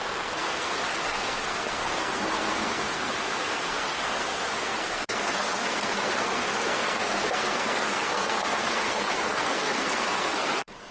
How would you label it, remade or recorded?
remade